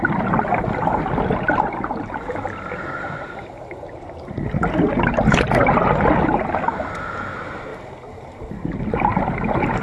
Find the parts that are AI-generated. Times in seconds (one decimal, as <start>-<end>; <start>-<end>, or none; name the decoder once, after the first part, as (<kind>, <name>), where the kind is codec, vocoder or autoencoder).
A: none